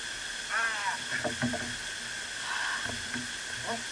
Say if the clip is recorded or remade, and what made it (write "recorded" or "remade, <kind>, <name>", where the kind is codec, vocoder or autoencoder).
recorded